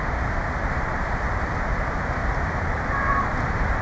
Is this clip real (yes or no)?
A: yes